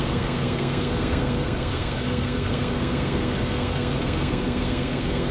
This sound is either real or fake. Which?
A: fake